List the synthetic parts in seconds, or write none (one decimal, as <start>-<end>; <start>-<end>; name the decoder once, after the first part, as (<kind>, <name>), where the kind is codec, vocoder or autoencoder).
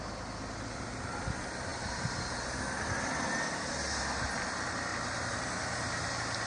4.9-6.1 (vocoder, BigVGAN v2)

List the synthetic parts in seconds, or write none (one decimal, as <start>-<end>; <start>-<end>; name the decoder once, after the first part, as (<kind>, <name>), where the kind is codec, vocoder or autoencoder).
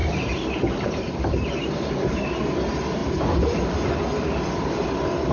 0.0-1.9 (vocoder, BigVGAN v2); 3.0-3.9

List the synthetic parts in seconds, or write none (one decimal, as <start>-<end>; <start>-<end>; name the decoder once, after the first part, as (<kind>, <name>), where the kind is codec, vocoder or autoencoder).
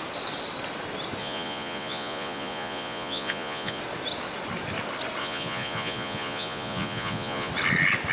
1.2-3.8 (vocoder, Vocos); 5.2-7.5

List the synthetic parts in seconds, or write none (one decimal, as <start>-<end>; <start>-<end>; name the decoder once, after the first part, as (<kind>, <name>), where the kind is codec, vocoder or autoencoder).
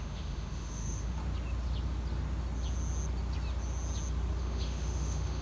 0.0-1.2 (autoencoder, DAC-VAE); 4.4-5.4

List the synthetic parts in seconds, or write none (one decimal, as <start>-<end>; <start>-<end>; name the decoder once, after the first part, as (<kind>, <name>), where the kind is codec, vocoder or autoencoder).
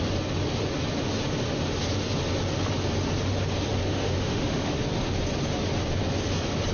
3.8-4.8 (autoencoder, DAC-VAE)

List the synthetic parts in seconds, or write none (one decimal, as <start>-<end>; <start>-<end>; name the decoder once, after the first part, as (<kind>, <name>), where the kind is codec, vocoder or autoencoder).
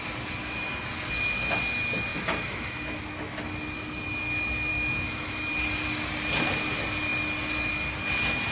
2.1-3.4 (autoencoder, DAC-VAE); 4.7-5.5